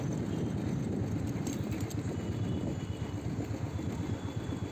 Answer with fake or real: real